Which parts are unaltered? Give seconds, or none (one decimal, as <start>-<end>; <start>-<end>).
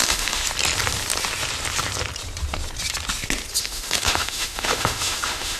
0.4-3.6